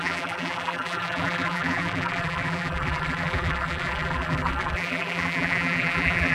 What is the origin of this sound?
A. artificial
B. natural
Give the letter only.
A